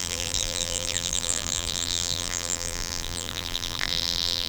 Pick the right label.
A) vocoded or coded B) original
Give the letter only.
A